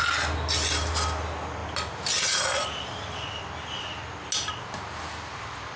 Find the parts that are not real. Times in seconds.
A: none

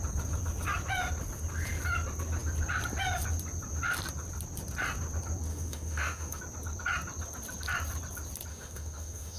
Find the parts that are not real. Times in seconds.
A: 5.5-6.4 (autoencoder, DAC-VAE); 8.5-9.4